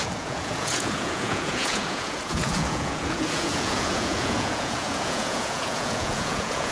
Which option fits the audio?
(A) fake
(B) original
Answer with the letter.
A